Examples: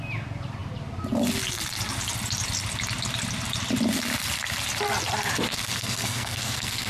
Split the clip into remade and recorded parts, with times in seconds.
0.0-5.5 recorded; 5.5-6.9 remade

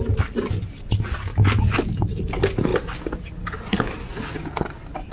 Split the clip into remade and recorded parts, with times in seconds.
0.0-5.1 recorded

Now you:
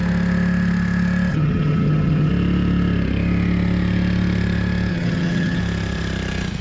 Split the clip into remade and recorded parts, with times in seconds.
0.0-1.3 recorded; 1.3-2.3 remade; 2.3-4.9 recorded; 4.9-5.6 remade; 5.6-6.6 recorded

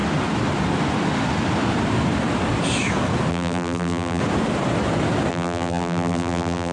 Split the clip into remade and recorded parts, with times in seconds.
0.0-3.3 recorded; 3.3-4.2 remade; 4.2-5.3 recorded; 5.3-6.7 remade

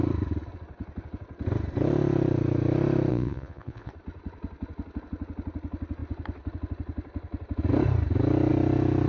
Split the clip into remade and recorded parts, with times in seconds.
0.0-3.1 recorded; 3.1-3.9 remade; 3.9-9.1 recorded